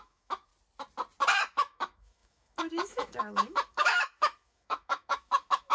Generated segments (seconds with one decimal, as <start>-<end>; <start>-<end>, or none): 0.0-0.5; 1.4-5.7